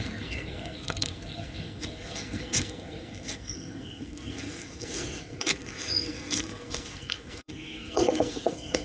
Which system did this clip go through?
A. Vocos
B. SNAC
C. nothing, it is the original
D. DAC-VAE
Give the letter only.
B